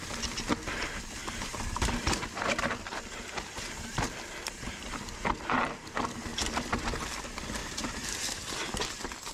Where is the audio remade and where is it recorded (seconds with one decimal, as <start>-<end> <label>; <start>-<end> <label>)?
0.0-1.2 recorded; 1.2-5.4 remade; 5.4-7.6 recorded; 7.6-9.3 remade